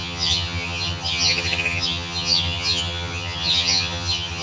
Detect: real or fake fake